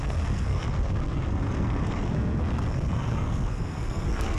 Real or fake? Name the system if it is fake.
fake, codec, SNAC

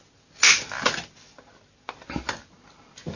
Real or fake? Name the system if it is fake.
real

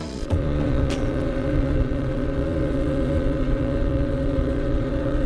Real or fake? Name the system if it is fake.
fake, vocoder, Vocos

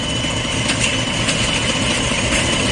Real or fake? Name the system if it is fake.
real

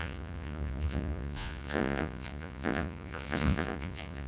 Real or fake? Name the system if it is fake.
fake, vocoder, Vocos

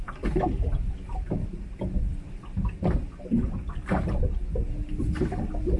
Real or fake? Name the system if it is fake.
real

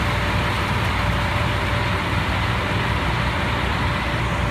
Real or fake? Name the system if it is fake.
real